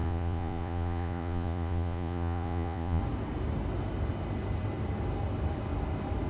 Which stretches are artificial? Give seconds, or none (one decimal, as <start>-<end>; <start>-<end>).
0.0-3.0